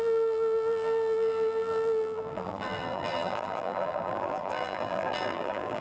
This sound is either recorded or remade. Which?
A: remade